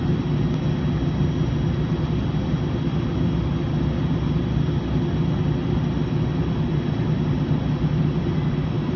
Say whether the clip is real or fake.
real